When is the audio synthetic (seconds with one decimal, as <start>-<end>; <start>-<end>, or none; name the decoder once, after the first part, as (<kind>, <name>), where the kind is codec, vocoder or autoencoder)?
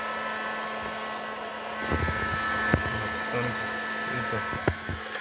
none